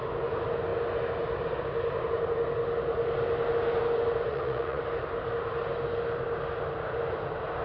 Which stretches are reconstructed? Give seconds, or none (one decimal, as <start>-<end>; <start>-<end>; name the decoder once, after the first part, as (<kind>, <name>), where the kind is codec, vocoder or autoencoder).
4.3-4.8 (vocoder, Vocos)